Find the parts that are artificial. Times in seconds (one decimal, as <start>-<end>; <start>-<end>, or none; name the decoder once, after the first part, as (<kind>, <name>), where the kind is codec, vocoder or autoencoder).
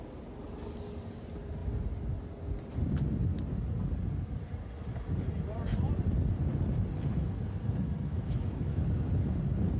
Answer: 8.1-8.8 (autoencoder, DAC-VAE)